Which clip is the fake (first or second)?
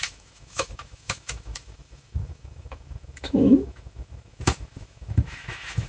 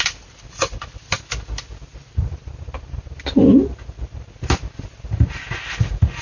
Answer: first